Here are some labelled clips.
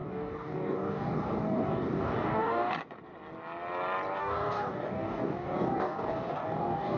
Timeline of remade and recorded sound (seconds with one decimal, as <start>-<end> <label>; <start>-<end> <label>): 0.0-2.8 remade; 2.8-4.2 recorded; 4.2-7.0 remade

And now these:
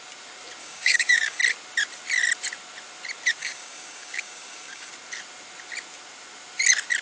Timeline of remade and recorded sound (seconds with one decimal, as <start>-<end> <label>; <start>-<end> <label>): 0.0-0.6 recorded; 0.6-1.4 remade; 1.4-3.4 recorded; 3.4-4.9 remade; 4.9-7.0 recorded

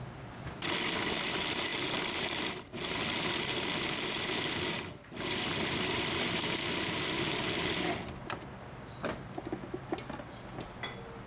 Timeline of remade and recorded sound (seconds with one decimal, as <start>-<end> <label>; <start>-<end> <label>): 0.0-11.3 recorded

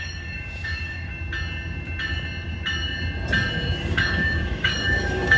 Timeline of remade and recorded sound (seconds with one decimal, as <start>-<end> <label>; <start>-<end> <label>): 0.0-1.1 remade; 1.1-3.8 recorded; 3.8-5.4 remade